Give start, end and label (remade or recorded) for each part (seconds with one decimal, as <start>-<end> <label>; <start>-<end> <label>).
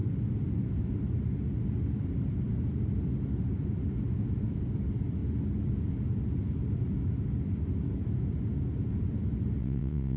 0.0-9.6 recorded; 9.6-10.2 remade